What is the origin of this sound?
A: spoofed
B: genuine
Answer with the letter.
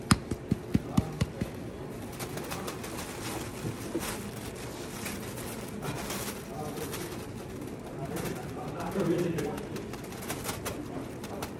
B